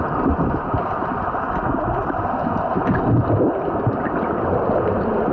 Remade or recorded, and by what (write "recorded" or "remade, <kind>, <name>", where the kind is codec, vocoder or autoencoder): recorded